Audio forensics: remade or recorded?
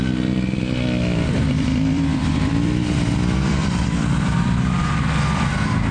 remade